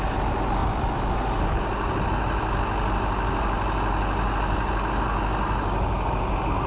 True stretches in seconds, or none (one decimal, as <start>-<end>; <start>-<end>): 0.0-6.7